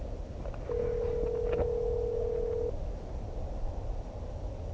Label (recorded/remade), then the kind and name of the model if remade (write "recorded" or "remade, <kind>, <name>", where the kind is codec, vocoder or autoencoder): recorded